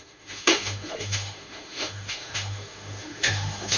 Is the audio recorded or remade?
remade